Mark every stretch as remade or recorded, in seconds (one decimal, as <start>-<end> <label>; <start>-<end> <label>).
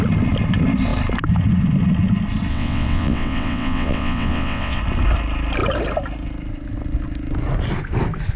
0.0-2.5 recorded; 2.5-4.8 remade; 4.8-8.4 recorded